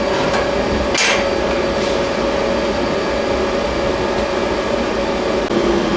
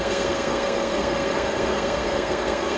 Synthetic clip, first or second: second